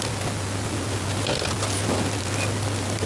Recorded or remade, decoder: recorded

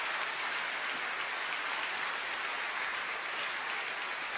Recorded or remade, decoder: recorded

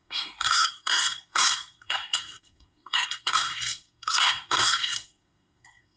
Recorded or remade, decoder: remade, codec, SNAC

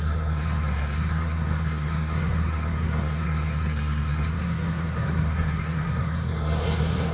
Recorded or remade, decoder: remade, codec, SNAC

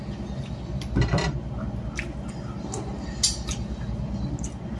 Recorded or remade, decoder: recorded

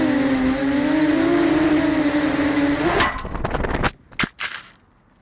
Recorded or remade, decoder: recorded